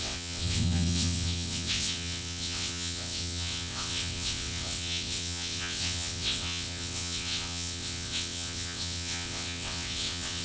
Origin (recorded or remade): remade